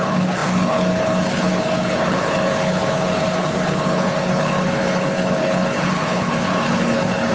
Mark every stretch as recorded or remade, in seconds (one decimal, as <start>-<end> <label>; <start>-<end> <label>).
0.0-7.3 remade